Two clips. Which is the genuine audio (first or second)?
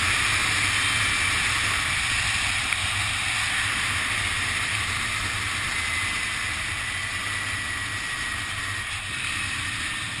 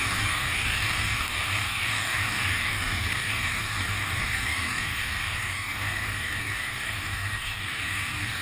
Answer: first